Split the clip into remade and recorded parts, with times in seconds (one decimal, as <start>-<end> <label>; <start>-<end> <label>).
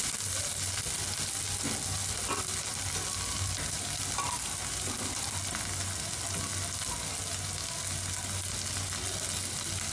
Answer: 0.0-9.9 recorded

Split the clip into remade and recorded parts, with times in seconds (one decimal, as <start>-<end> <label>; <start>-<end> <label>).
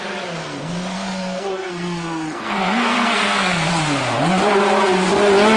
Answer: 0.0-0.4 recorded; 0.4-3.7 remade; 3.7-5.6 recorded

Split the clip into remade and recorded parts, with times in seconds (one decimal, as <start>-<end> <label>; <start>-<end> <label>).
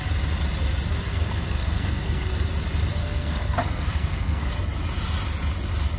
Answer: 0.0-1.1 recorded; 1.1-2.3 remade; 2.3-3.0 recorded; 3.0-4.5 remade; 4.5-6.0 recorded